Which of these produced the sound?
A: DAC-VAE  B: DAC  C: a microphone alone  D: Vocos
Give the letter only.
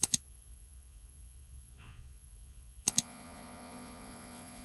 D